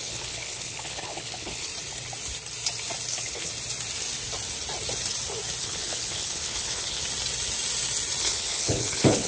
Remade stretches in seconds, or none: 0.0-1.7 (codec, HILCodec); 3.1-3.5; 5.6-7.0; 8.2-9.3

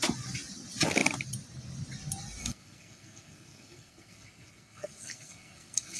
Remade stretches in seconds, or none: 2.4-6.0 (codec, SNAC)

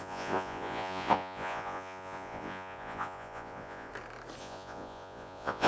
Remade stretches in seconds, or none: 0.0-3.9 (vocoder, Vocos); 4.4-5.7

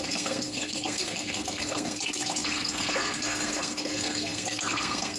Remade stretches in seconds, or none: 0.0-5.2 (codec, SNAC)

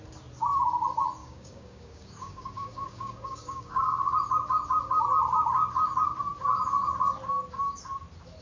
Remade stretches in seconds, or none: 1.2-4.1 (codec, DAC)

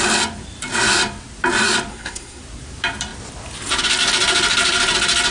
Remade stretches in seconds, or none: 1.9-2.4 (codec, SNAC)